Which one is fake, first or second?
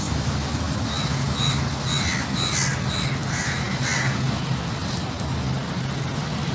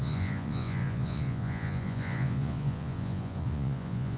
second